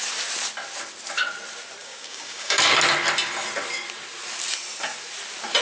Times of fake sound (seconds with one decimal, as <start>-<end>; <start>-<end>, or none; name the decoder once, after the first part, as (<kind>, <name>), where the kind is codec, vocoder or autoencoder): 1.8-2.6 (codec, DAC)